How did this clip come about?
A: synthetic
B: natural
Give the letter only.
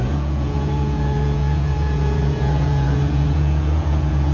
A